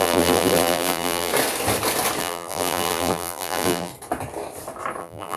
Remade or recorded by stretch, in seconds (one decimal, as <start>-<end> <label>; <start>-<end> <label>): 0.0-1.3 remade; 1.3-2.2 recorded; 2.2-3.9 remade; 3.9-5.0 recorded; 5.0-5.4 remade